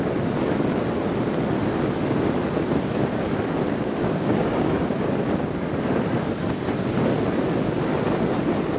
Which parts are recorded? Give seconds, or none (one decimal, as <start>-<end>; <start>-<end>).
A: 0.0-4.0; 4.9-8.8